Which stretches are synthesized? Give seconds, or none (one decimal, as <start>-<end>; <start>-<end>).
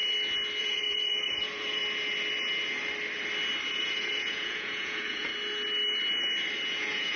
0.6-1.8; 3.7-5.3; 6.8-7.2